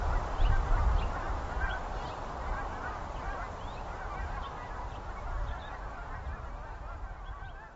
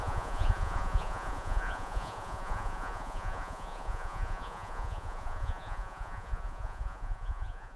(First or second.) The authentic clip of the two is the first